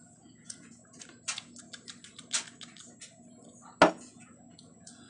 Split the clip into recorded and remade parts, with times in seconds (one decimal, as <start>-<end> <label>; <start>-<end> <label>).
0.0-0.8 remade; 0.8-3.9 recorded; 3.9-5.1 remade